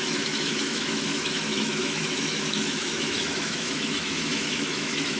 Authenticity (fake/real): fake